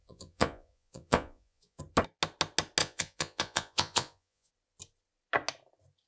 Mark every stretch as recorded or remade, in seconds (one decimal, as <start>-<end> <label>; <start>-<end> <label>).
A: 0.0-1.8 remade; 1.8-2.8 recorded; 2.8-4.5 remade; 4.5-6.1 recorded